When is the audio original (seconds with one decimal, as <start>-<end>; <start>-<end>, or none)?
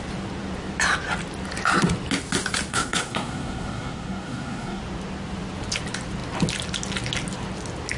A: 0.0-2.7; 4.8-8.0